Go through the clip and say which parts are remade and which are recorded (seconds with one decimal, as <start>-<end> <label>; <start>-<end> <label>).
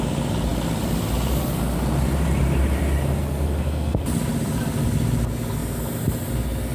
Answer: 0.0-3.2 recorded; 3.2-4.0 remade; 4.0-6.7 recorded